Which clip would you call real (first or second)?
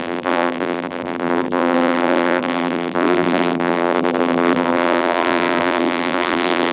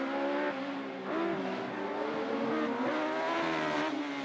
second